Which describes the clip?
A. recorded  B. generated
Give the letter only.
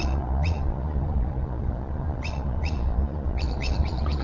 B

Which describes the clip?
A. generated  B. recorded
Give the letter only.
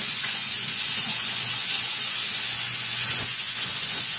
A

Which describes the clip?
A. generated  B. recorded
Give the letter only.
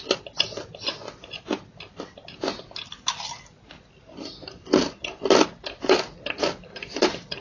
B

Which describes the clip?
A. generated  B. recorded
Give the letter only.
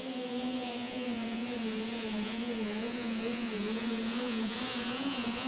A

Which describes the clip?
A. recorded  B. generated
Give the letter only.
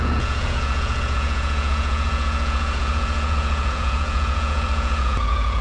B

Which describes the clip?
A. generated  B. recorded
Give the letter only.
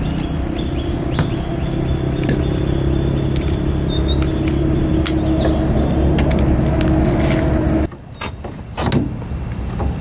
B